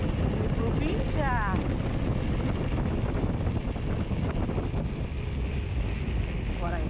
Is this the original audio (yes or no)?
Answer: yes